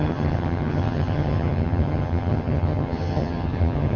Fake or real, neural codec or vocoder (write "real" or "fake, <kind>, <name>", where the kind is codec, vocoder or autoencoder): fake, vocoder, HiFi-GAN